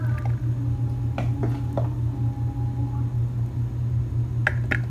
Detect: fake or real real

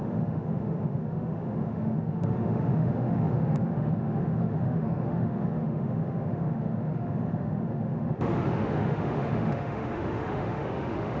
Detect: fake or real fake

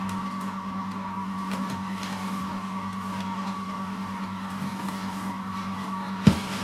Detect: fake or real fake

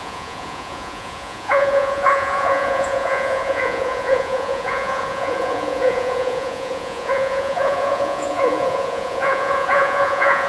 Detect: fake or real fake